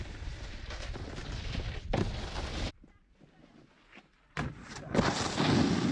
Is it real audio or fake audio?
real